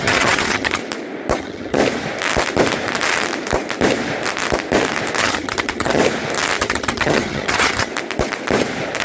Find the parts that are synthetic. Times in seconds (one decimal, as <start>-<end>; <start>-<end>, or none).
0.0-0.8; 1.4-1.8; 5.2-6.0; 6.6-7.9